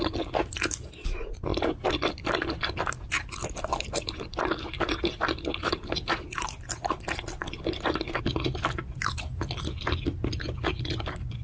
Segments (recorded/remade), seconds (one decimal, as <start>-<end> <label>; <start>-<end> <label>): 0.0-11.4 recorded